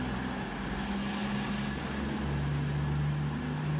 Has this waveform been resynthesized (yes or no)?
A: no